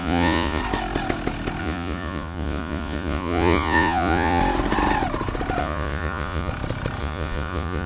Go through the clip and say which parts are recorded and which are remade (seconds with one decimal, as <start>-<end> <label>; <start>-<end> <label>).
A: 0.0-0.6 remade; 0.6-1.6 recorded; 1.6-4.4 remade; 4.4-5.6 recorded; 5.6-6.5 remade; 6.5-7.0 recorded; 7.0-7.9 remade